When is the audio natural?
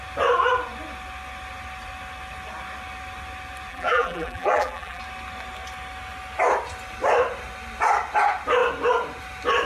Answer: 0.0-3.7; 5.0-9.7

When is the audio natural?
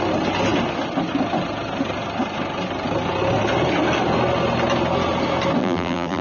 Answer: 0.0-5.6